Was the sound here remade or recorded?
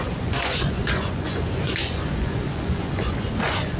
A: remade